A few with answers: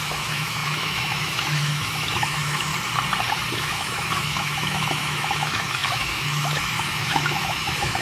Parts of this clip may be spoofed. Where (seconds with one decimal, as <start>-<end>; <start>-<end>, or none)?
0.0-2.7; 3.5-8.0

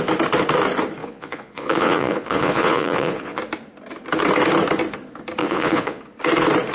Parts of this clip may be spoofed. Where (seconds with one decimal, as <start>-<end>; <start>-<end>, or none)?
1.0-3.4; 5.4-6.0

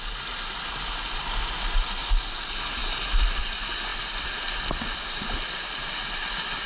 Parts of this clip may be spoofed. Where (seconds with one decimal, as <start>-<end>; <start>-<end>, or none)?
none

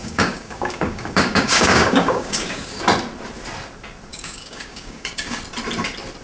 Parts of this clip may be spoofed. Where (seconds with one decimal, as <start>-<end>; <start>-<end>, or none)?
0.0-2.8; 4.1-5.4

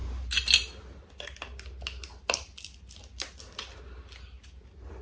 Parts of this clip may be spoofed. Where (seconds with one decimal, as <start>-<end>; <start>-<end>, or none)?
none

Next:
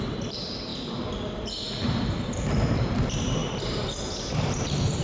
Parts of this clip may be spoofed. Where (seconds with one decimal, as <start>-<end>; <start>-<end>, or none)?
0.0-0.7; 2.0-3.4; 4.4-5.0